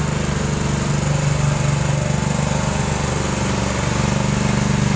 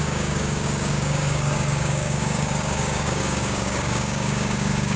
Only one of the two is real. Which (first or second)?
first